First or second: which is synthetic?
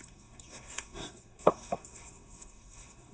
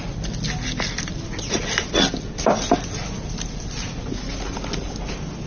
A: first